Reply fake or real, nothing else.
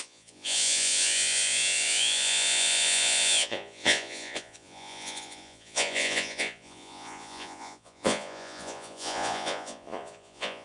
fake